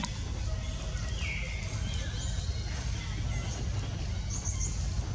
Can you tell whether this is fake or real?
real